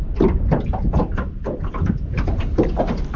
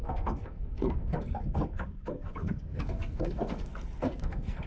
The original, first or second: first